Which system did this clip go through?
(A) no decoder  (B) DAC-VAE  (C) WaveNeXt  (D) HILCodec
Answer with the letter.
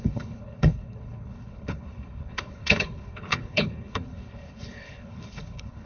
D